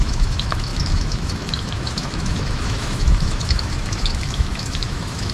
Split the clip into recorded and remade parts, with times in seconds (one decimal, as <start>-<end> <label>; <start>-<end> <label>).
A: 0.0-5.3 remade